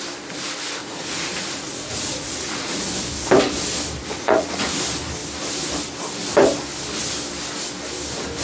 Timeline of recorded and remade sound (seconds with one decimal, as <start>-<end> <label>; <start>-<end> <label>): 0.0-0.8 recorded; 0.8-2.9 remade; 2.9-4.1 recorded; 4.1-4.8 remade; 4.8-8.4 recorded